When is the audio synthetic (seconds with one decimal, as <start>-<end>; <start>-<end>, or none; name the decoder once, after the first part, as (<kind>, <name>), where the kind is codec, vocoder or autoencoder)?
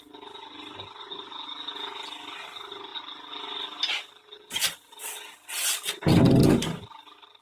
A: none